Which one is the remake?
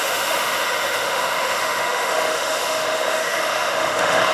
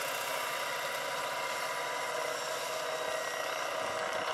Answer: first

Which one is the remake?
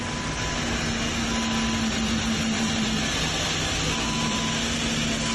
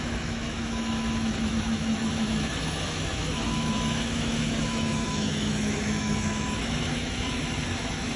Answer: second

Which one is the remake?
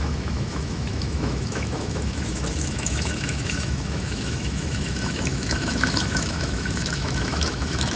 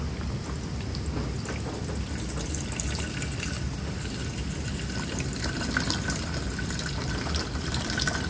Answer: first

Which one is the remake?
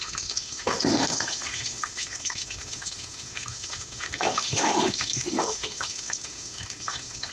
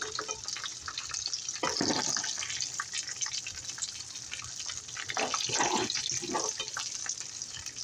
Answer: first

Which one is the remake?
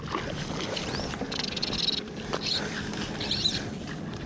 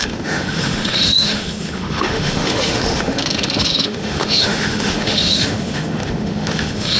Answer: second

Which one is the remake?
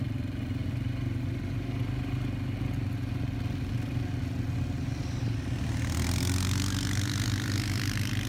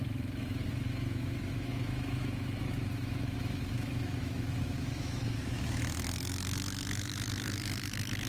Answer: second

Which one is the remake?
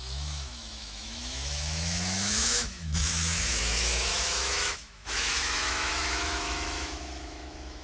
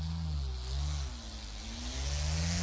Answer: first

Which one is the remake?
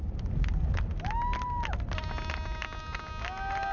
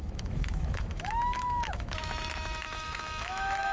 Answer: second